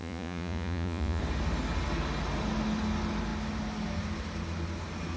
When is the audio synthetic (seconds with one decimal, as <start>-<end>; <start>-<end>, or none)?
0.0-1.2